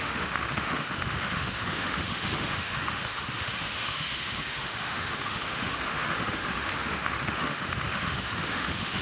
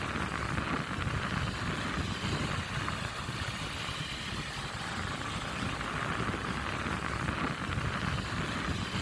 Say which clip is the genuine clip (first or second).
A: second